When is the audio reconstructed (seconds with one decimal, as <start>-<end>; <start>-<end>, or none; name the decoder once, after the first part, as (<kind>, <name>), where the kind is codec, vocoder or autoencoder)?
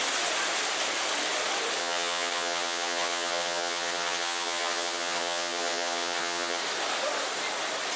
1.8-6.6 (vocoder, HiFi-GAN)